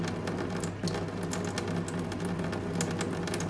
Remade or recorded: recorded